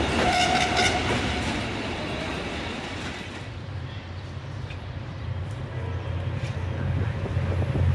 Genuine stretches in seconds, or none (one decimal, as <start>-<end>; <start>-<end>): 0.0-1.0; 5.7-7.9